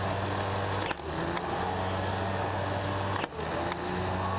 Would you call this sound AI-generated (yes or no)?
no